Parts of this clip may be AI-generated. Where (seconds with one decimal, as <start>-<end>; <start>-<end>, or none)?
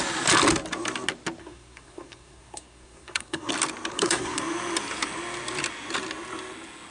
1.4-3.5; 3.9-4.4